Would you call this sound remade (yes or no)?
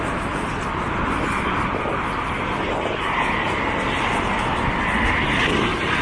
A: no